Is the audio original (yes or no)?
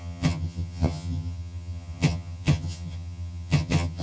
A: no